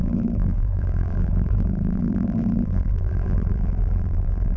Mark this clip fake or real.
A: fake